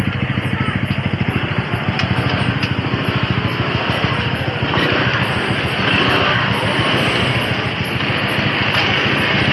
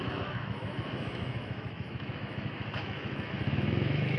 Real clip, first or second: first